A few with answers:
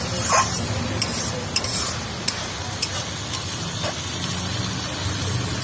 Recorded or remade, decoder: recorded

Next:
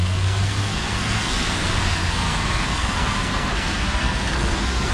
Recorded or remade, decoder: remade, codec, SNAC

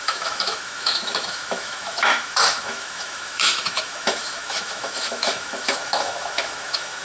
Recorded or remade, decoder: remade, autoencoder, DAC-VAE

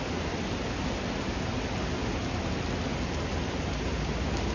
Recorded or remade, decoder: recorded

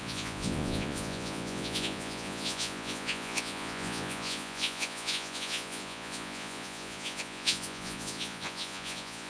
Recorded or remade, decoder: remade, vocoder, Vocos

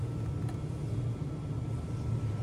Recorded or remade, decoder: recorded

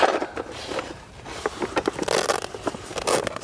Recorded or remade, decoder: recorded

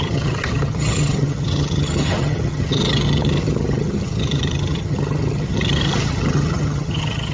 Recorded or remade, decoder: remade, vocoder, HiFi-GAN